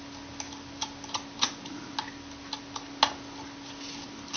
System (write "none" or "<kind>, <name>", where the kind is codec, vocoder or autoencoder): none